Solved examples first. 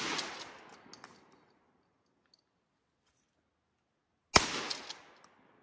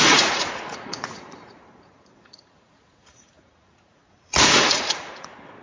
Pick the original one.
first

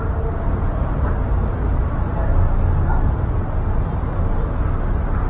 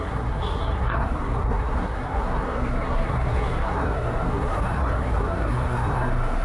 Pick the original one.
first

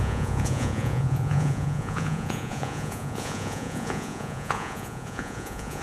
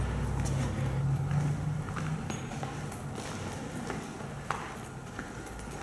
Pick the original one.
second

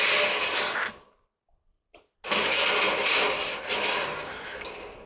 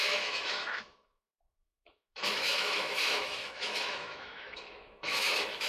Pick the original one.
first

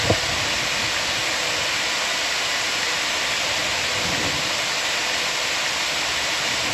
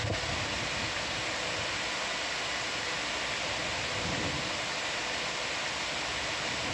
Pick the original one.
second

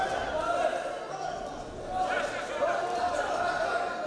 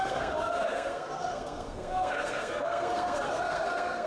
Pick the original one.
first